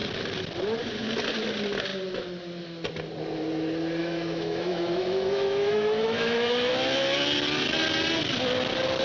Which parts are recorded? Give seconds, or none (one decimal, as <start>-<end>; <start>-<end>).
0.0-4.0; 6.7-9.0

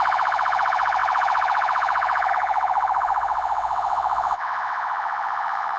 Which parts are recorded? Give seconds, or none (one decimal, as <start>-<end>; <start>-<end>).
none

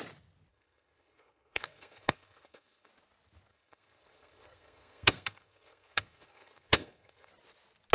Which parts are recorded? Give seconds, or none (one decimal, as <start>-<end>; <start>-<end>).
0.0-0.5; 2.9-3.5; 7.3-7.9

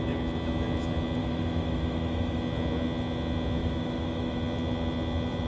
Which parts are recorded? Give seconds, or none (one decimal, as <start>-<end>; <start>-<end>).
0.0-1.2; 2.4-3.6; 4.4-5.5

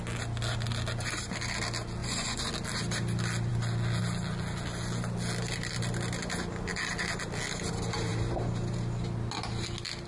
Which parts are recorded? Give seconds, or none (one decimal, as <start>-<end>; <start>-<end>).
0.0-2.0; 2.5-10.1